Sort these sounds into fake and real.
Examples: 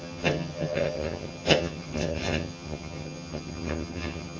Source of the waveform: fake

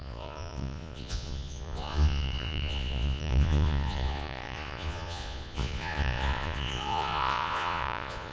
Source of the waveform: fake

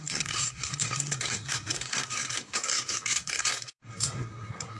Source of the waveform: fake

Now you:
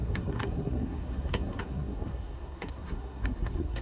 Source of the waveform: fake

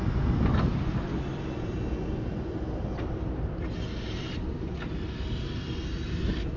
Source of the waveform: real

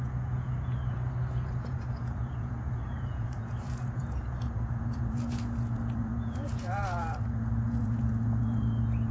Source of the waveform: fake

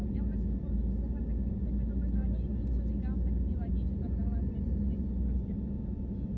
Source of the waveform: real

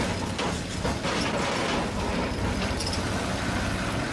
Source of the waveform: real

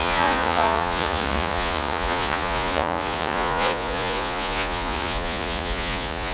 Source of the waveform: fake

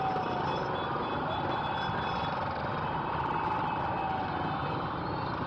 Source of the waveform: real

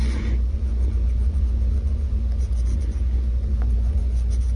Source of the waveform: fake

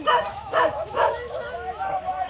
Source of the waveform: fake